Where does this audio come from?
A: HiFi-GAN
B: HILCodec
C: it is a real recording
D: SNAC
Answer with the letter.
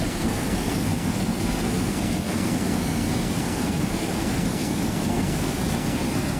D